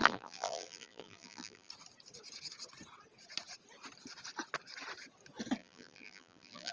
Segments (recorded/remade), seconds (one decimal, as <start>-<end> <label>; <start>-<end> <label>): 0.0-1.7 remade; 1.7-5.6 recorded; 5.6-6.7 remade